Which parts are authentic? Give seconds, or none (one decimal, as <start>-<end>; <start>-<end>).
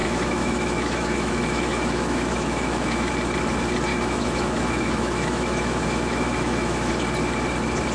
3.1-3.9; 6.9-7.9